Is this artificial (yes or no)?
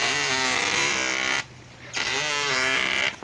no